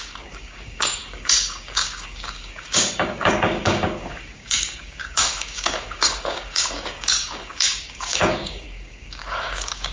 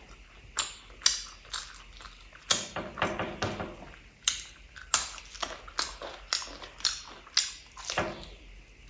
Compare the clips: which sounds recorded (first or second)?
second